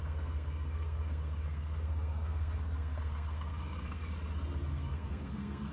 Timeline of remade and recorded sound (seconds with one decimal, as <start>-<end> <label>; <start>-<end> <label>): 0.0-4.1 remade; 4.1-4.7 recorded; 4.7-5.7 remade

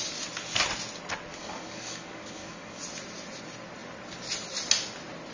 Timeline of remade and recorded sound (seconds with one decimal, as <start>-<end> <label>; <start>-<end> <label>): 0.0-1.3 recorded; 1.3-2.8 remade; 2.8-5.3 recorded